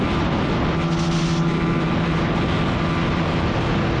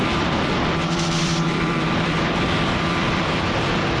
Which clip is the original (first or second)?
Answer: first